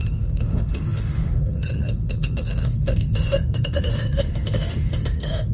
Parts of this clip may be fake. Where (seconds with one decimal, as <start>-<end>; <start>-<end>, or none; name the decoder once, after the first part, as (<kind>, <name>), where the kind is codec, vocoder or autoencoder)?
0.0-5.5 (autoencoder, DAC-VAE)